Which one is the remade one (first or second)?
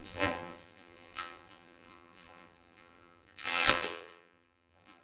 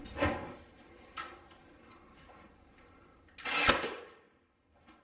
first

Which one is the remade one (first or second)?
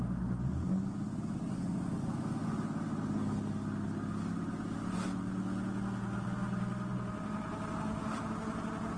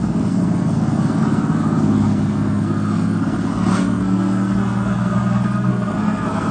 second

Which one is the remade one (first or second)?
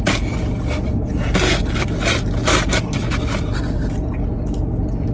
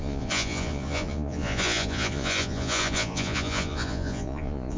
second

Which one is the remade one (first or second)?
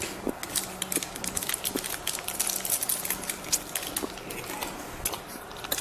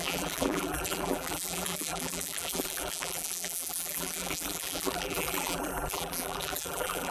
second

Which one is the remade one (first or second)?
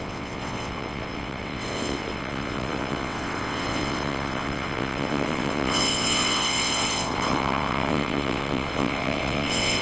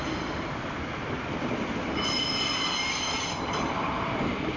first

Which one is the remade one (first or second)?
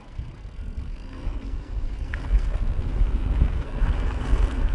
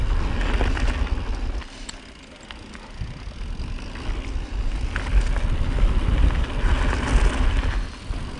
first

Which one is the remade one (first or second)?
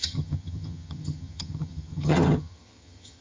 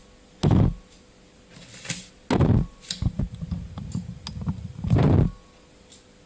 first